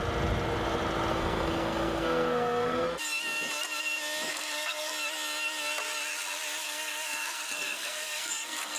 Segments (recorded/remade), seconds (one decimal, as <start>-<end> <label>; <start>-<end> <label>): 0.0-1.1 recorded; 1.1-3.0 remade; 3.0-4.3 recorded; 4.3-4.9 remade; 4.9-6.6 recorded; 6.6-8.8 remade